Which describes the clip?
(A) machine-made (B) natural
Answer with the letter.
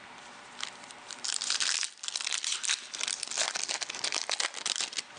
B